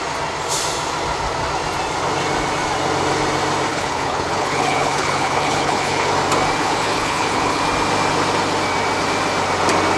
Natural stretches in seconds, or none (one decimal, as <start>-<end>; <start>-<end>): 0.0-3.7; 6.1-6.6; 7.6-10.0